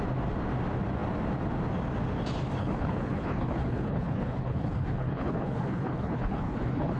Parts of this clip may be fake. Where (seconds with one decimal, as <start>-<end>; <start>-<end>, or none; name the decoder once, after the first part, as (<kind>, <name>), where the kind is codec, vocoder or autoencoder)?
2.6-7.0 (codec, HILCodec)